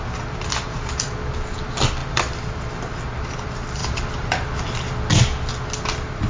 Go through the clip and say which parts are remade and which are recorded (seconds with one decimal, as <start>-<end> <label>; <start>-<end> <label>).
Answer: 0.0-2.0 recorded; 2.0-2.6 remade; 2.6-3.8 recorded; 3.8-5.1 remade; 5.1-6.3 recorded